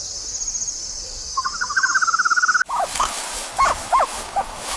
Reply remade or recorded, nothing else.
recorded